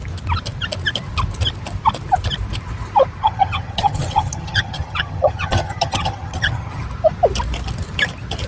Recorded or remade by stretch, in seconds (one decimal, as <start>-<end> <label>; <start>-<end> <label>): 0.0-3.2 recorded; 3.2-6.8 remade; 6.8-8.5 recorded